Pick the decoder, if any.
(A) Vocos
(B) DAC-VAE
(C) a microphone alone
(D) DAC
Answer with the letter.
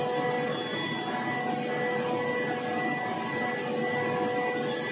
C